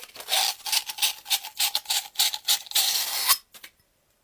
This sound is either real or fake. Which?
real